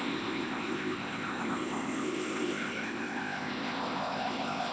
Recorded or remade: remade